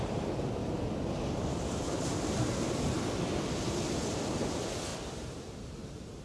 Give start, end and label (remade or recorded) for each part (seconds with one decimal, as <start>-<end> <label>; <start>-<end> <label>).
0.0-0.6 recorded; 0.6-4.3 remade; 4.3-4.9 recorded; 4.9-5.6 remade; 5.6-6.2 recorded